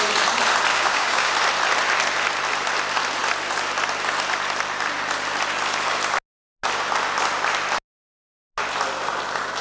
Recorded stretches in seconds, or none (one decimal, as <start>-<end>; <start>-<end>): 0.0-0.7; 1.3-9.6